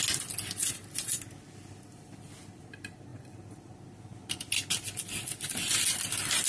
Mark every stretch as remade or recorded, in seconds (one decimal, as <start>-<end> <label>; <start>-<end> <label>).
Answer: 0.0-6.5 recorded